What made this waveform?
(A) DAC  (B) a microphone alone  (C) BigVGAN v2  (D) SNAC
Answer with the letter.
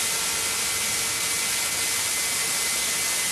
B